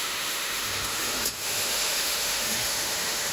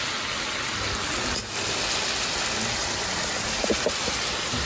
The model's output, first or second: first